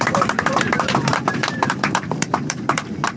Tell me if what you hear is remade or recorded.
remade